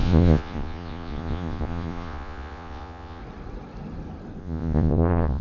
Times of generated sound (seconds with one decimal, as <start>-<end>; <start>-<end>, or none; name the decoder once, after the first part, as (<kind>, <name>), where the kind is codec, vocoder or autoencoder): 0.0-3.2 (vocoder, Vocos); 4.4-5.4